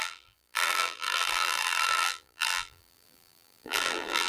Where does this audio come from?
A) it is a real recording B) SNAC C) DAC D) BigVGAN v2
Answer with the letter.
D